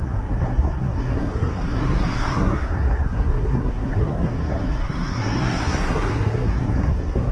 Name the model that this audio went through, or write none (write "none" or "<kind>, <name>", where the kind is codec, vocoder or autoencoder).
codec, SNAC